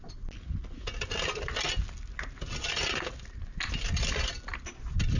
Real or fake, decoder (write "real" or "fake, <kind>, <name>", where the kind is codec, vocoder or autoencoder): real